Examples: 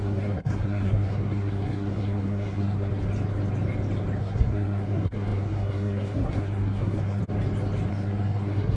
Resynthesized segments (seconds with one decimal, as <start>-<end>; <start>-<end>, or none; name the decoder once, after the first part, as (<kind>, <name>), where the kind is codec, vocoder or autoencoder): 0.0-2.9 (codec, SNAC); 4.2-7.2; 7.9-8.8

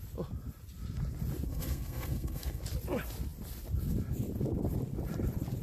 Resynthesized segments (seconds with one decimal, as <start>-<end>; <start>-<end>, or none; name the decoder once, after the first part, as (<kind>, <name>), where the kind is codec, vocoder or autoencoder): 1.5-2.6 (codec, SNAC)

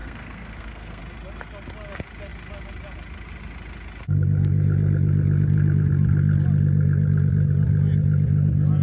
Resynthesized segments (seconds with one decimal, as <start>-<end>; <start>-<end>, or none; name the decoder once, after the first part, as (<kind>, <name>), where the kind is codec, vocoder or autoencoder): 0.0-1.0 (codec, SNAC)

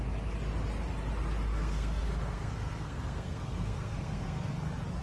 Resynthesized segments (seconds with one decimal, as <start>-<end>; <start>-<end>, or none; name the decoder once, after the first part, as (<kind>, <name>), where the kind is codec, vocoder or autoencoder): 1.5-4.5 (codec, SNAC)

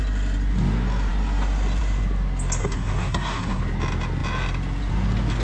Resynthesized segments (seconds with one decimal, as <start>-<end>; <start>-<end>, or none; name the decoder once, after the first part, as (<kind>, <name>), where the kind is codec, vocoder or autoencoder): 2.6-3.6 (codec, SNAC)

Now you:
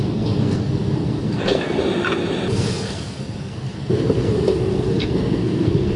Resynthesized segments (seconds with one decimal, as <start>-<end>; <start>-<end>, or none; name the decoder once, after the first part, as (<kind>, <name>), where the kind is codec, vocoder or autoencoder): 0.0-1.8 (codec, SNAC); 2.5-6.0

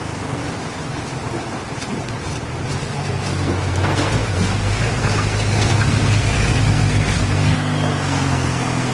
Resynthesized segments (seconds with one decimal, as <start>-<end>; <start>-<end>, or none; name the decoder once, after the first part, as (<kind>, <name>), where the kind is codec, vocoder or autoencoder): 0.0-0.4 (codec, SNAC); 2.8-8.9